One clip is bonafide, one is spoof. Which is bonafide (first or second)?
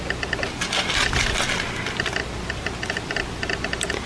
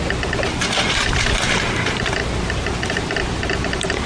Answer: first